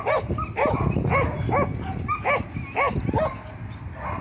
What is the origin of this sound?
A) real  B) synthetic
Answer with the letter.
A